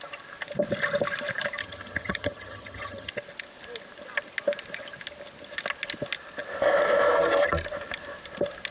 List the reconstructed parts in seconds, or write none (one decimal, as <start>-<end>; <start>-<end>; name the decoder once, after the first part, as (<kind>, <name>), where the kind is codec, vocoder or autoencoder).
1.6-3.1 (vocoder, HiFi-GAN)